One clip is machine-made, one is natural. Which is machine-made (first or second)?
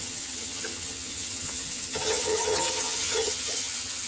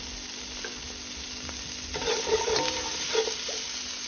first